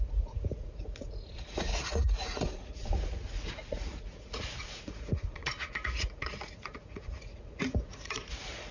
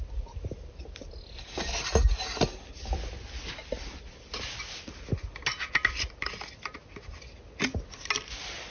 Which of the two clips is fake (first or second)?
first